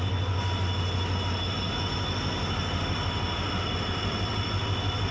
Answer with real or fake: real